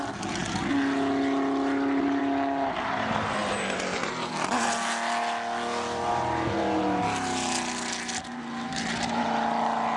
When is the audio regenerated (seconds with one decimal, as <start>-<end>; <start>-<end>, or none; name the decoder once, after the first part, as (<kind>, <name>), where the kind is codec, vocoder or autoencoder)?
none